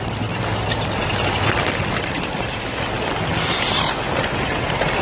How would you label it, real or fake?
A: real